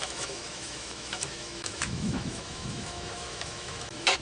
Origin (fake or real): fake